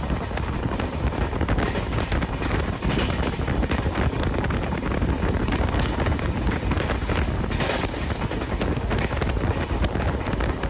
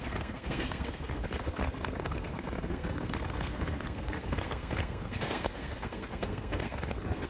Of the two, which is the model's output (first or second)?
second